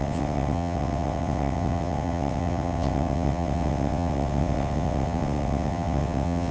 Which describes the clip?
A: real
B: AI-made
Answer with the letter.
B